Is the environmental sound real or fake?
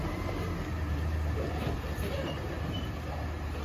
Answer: real